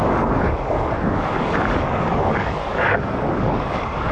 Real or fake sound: fake